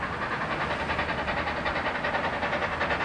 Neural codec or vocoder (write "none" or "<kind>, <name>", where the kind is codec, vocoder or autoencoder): none